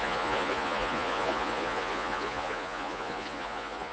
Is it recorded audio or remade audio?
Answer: remade